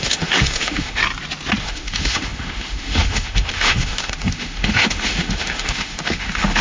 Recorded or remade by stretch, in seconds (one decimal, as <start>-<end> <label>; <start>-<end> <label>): 0.0-1.0 remade; 1.0-1.6 recorded; 1.6-6.6 remade